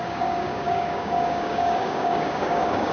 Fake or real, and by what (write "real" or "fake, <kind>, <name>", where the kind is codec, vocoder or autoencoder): fake, codec, DAC